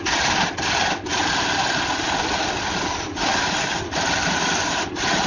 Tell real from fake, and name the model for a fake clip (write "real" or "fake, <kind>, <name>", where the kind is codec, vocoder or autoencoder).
real